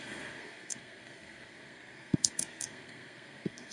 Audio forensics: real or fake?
fake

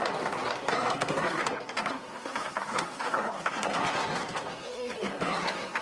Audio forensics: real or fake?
fake